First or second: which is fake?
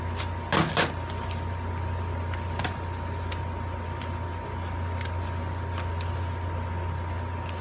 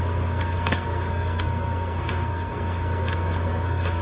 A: second